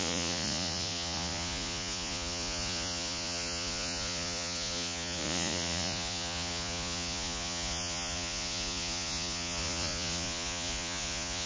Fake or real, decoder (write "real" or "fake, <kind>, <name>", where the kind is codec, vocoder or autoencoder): fake, vocoder, Vocos